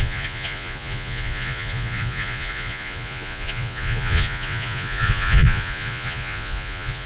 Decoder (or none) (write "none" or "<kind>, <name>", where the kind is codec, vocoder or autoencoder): vocoder, Vocos